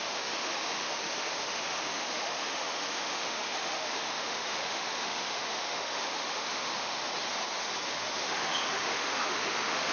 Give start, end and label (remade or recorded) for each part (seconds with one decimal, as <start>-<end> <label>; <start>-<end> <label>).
0.0-7.0 remade; 7.0-7.9 recorded; 7.9-9.9 remade